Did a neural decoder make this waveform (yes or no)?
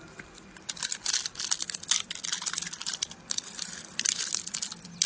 no